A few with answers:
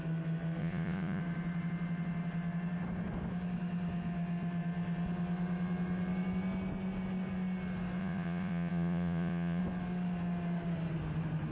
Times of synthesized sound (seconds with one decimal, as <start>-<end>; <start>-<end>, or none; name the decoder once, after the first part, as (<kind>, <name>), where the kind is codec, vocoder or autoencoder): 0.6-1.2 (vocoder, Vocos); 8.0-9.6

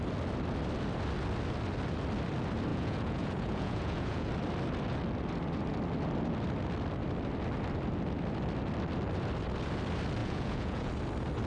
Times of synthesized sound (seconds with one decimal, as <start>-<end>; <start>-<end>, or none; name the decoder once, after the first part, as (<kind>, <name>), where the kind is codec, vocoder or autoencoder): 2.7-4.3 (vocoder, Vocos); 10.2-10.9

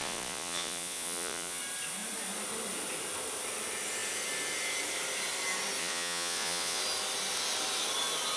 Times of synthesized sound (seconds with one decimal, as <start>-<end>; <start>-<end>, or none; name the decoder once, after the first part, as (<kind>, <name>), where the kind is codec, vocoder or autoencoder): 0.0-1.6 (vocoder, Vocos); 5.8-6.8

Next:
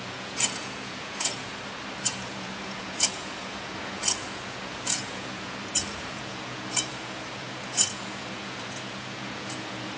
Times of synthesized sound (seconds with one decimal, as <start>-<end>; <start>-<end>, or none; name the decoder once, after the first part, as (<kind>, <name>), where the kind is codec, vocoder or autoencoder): 0.0-1.5 (vocoder, Vocos); 2.0-10.0